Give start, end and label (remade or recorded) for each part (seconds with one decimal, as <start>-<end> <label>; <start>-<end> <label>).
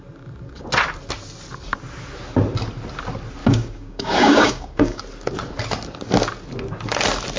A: 0.0-3.4 recorded; 3.4-5.0 remade; 5.0-7.4 recorded